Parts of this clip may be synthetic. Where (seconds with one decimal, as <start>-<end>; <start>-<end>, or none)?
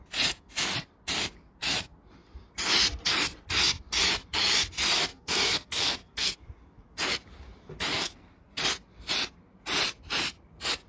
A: 5.1-6.3; 7.9-8.6